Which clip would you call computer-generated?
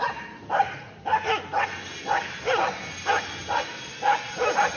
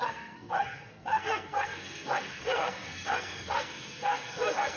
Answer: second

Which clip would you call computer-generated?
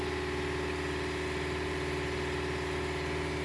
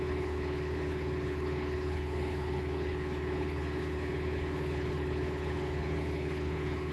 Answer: second